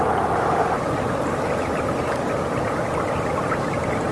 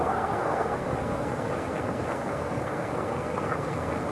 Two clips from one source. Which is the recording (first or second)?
first